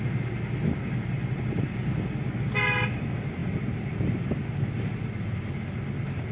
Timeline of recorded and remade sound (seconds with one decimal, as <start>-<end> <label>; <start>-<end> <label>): 0.0-6.3 recorded